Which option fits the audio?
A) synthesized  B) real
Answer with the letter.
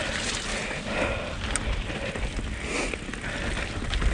B